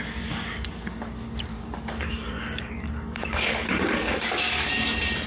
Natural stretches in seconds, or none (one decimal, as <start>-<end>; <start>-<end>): 0.0-1.5; 4.7-5.3